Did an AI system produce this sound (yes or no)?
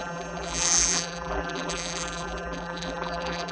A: yes